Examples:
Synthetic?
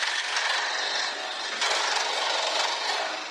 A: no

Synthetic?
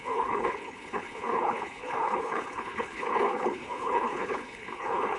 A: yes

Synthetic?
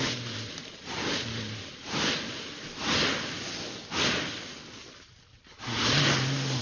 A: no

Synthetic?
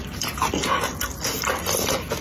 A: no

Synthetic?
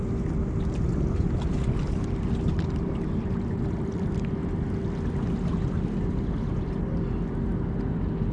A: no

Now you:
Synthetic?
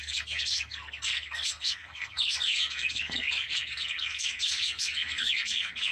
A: yes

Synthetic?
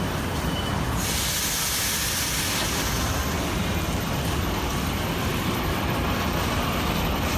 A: yes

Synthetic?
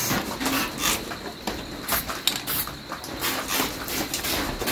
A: no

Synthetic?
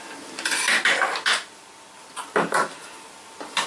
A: no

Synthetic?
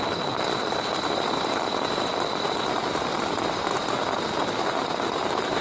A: no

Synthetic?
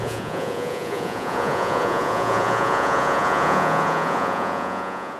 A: yes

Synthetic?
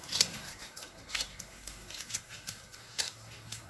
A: yes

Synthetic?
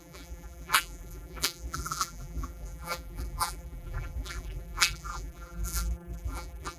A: yes